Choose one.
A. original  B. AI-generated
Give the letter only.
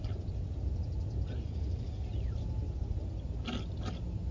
A